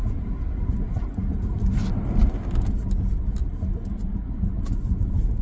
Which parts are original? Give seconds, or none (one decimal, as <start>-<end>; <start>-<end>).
0.0-5.4